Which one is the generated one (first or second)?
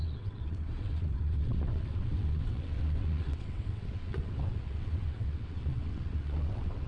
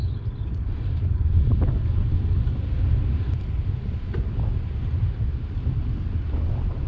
first